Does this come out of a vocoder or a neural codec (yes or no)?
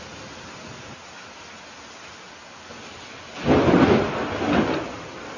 no